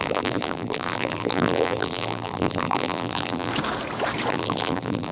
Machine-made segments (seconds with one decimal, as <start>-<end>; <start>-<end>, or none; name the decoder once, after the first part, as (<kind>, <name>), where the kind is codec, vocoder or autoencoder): 0.0-3.5 (vocoder, BigVGAN v2); 4.3-5.1